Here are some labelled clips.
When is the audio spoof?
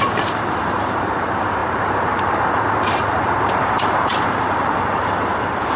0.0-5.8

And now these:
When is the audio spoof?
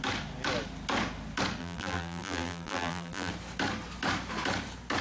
1.6-3.3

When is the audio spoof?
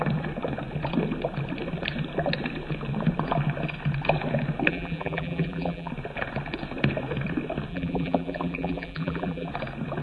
4.7-5.9; 7.7-9.5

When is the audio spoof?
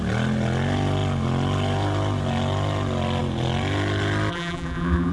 4.3-5.1